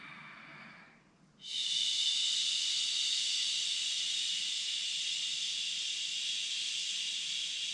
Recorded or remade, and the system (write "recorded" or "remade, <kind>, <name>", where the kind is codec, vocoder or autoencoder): recorded